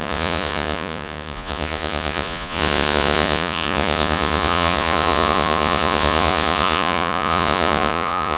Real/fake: fake